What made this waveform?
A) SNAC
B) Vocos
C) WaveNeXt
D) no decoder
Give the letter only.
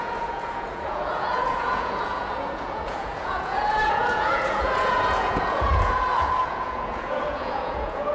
B